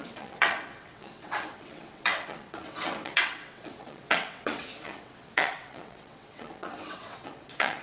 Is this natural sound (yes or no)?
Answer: no